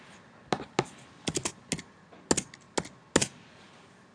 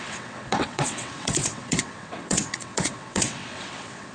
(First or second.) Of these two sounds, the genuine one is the first